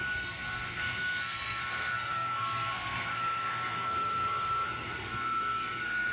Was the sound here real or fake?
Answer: fake